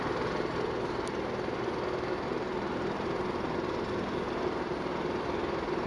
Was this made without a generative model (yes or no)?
yes